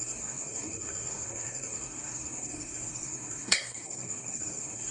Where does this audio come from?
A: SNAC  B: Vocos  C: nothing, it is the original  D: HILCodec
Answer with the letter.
A